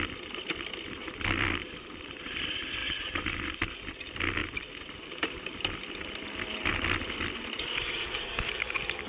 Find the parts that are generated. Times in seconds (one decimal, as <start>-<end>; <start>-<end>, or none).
none